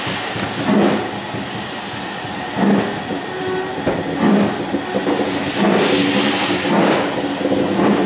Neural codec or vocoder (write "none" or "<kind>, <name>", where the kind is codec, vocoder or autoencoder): none